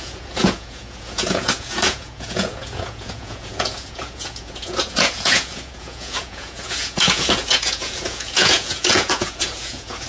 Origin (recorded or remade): remade